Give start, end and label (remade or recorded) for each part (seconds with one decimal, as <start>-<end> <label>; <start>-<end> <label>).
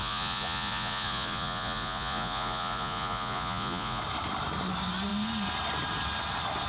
0.0-4.0 remade; 4.0-6.7 recorded